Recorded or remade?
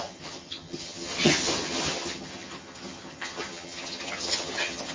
remade